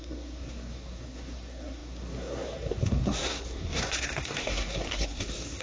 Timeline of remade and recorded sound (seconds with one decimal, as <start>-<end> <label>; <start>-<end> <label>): 0.0-5.6 remade